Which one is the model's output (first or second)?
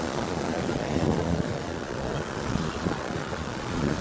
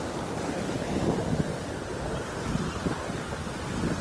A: first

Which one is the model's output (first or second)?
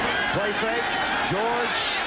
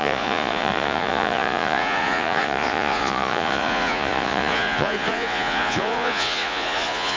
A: second